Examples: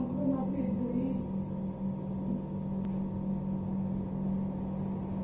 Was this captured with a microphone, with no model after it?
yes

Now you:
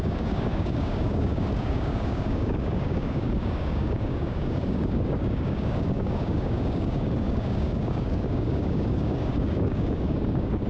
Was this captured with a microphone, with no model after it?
no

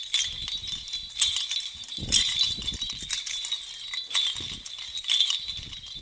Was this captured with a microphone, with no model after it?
yes